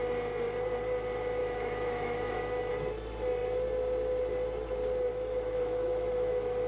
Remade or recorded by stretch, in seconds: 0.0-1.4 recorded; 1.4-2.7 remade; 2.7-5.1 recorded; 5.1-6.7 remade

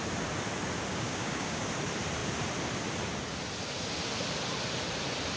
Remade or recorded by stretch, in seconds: 0.0-0.9 recorded; 0.9-1.6 remade; 1.6-5.4 recorded

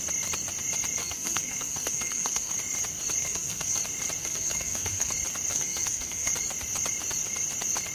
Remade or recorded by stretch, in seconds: 0.0-1.0 recorded; 1.0-2.5 remade; 2.5-3.2 recorded; 3.2-3.8 remade; 3.8-4.2 recorded; 4.2-5.1 remade; 5.1-5.5 recorded; 5.5-6.3 remade; 6.3-7.9 recorded

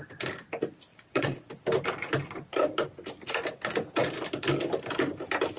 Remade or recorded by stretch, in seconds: 0.0-0.9 recorded; 0.9-1.5 remade; 1.5-5.6 recorded

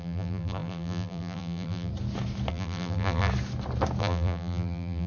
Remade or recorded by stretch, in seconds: 0.0-1.9 remade; 1.9-2.5 recorded; 2.5-3.3 remade; 3.3-4.0 recorded; 4.0-5.1 remade

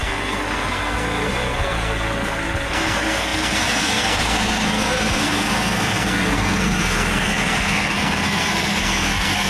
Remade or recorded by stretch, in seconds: 0.0-9.5 remade

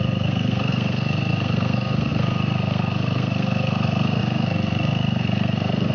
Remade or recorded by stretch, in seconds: 0.0-5.9 remade